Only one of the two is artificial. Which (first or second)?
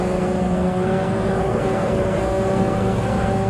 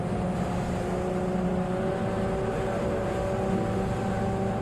first